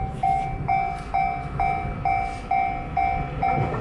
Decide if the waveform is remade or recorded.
recorded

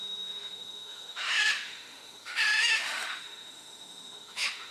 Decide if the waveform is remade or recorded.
remade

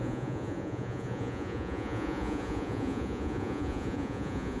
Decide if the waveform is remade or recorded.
remade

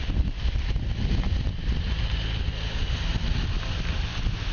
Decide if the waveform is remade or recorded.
recorded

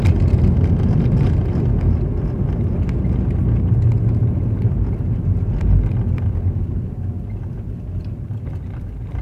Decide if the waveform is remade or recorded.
recorded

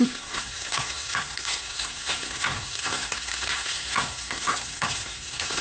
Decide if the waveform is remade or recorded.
remade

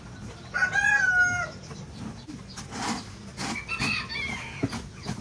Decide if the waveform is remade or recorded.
recorded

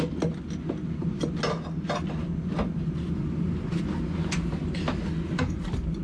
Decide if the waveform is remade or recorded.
recorded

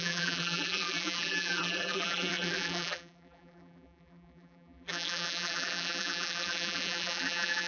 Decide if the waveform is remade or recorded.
remade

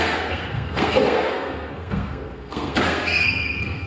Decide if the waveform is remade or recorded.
remade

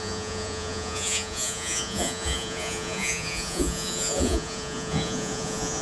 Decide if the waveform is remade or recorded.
remade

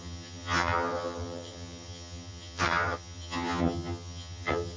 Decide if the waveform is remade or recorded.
remade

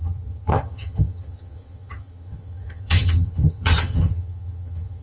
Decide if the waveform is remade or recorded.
remade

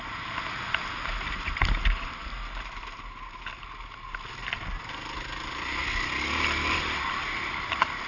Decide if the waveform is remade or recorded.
recorded